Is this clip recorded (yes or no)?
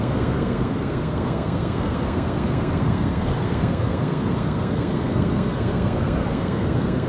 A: no